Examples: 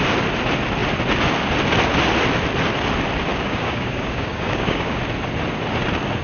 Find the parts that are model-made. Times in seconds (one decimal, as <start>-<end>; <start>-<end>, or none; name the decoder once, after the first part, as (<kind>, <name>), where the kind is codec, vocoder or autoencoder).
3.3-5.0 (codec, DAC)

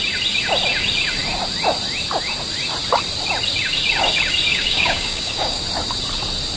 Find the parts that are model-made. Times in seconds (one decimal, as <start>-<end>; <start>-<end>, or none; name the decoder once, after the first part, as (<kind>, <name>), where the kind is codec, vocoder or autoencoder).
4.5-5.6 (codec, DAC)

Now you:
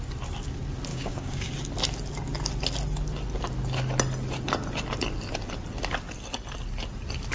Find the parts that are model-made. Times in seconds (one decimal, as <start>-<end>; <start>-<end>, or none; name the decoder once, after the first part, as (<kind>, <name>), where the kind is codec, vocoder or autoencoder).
0.9-1.5 (codec, DAC)